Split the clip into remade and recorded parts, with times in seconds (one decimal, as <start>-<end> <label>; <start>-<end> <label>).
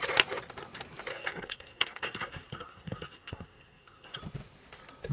0.0-1.1 recorded; 1.1-4.2 remade; 4.2-5.1 recorded